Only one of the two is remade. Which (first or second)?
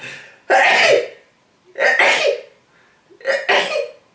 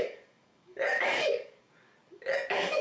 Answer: second